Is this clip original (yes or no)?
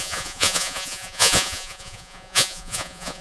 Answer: no